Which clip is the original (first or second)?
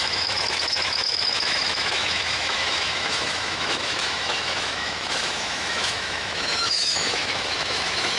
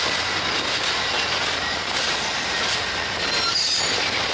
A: second